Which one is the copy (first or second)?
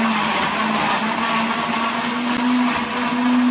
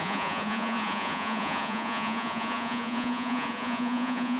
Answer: second